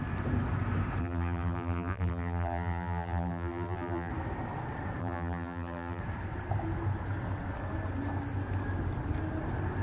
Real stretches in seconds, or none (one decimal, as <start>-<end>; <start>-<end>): 0.0-1.0; 4.1-5.0; 6.0-9.8